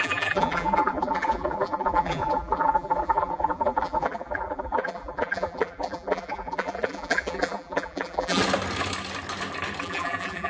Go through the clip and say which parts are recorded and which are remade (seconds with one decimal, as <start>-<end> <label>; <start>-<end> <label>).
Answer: 0.0-8.4 remade; 8.4-9.8 recorded; 9.8-10.5 remade